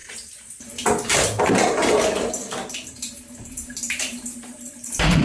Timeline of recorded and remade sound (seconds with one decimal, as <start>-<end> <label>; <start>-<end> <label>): 0.0-1.4 recorded; 1.4-5.2 remade